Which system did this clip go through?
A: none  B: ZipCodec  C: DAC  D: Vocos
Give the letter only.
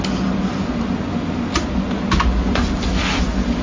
A